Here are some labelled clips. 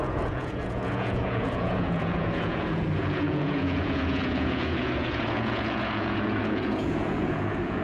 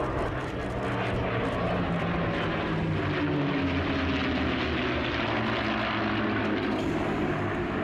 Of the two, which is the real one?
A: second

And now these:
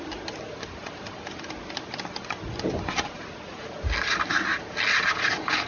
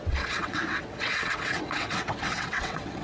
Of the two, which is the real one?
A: first